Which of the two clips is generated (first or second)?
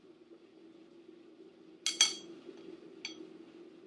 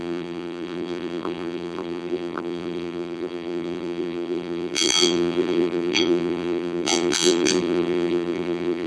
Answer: second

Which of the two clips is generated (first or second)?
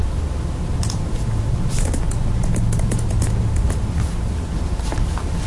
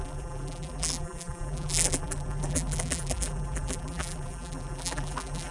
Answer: second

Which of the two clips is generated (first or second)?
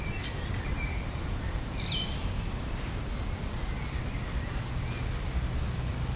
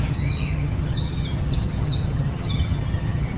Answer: second